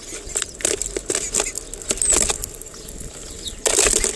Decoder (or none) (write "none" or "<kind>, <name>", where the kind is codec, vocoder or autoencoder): none